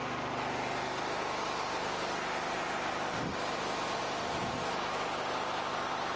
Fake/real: real